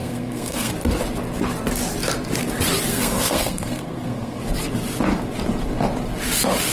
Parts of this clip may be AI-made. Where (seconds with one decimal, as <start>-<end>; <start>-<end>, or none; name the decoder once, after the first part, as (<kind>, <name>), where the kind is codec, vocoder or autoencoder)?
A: 0.0-0.7 (codec, SNAC); 2.9-4.4